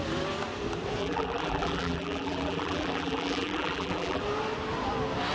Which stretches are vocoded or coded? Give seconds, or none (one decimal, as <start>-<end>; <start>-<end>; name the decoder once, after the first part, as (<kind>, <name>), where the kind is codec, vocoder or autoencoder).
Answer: 1.0-4.2 (vocoder, BigVGAN v2)